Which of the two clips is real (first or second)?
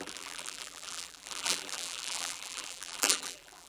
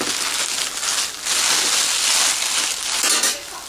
second